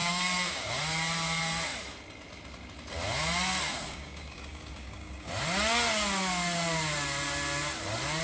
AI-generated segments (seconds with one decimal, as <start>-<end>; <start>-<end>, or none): 0.0-0.8; 3.7-5.3